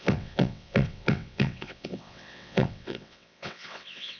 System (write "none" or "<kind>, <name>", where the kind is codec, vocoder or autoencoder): vocoder, WaveNeXt